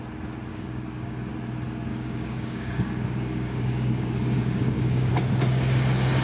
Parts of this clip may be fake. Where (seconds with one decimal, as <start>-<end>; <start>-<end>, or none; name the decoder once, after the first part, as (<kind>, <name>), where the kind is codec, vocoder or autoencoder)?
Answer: 0.5-1.3 (codec, DAC); 1.9-5.1